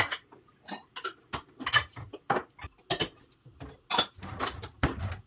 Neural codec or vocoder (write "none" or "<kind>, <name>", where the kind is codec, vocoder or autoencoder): none